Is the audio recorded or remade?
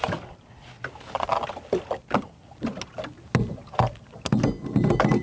recorded